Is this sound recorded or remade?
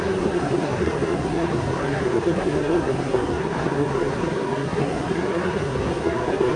remade